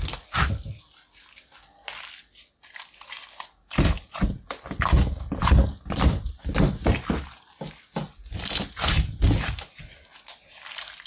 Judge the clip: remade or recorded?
recorded